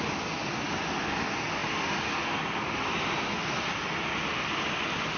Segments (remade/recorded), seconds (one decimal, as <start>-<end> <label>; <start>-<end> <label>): 0.0-5.2 recorded